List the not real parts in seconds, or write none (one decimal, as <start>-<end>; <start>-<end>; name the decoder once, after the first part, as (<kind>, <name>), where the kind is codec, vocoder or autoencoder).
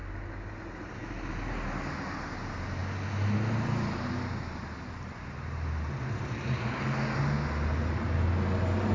none